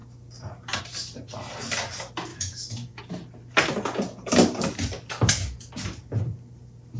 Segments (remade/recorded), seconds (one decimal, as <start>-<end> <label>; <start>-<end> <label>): 0.0-2.3 recorded; 2.3-3.0 remade; 3.0-7.0 recorded